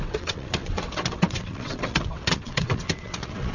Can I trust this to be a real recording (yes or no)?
no